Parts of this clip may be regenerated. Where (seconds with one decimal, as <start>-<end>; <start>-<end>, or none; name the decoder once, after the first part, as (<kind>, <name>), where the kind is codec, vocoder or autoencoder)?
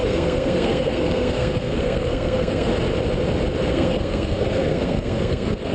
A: 0.0-2.7 (codec, SNAC); 3.7-5.7